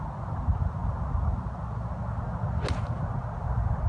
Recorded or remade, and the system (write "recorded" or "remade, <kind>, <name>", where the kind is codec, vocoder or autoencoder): recorded